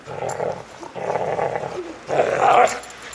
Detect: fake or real real